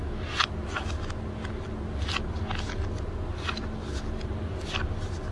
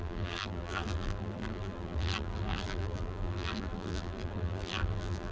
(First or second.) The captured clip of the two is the first